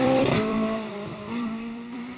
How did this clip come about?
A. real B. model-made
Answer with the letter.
B